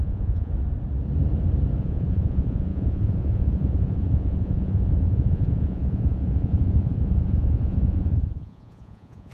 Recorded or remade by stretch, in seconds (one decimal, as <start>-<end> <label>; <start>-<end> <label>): 0.0-0.5 remade; 0.5-1.8 recorded; 1.8-9.3 remade